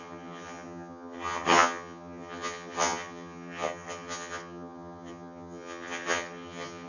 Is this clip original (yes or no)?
no